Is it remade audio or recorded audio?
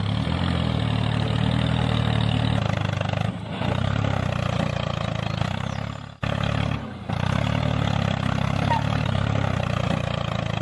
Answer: recorded